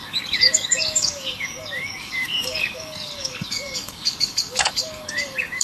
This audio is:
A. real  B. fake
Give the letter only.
B